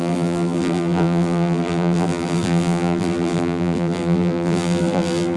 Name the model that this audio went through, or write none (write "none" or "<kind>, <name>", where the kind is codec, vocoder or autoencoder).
vocoder, BigVGAN v2